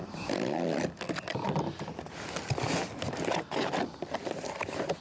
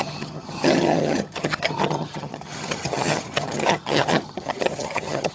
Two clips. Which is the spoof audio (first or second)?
second